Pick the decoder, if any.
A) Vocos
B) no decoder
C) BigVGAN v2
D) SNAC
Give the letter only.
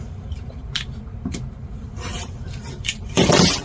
C